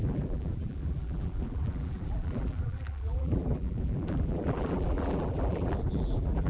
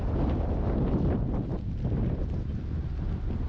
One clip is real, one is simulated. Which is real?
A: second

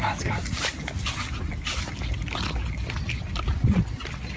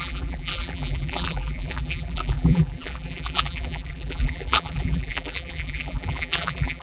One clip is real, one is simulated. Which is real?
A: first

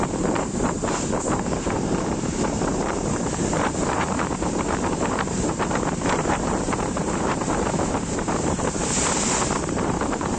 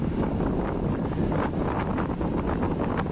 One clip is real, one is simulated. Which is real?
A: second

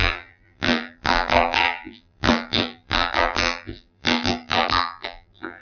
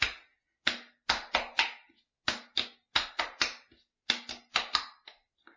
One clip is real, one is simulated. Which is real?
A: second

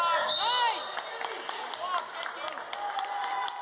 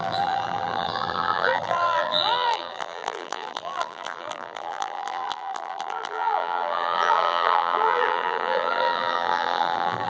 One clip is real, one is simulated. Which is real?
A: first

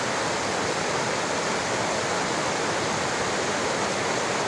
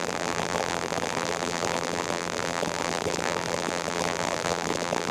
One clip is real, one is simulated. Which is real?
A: first